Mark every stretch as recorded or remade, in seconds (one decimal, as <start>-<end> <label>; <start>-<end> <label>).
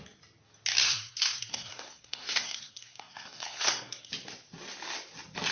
0.0-0.8 recorded; 0.8-4.1 remade; 4.1-5.5 recorded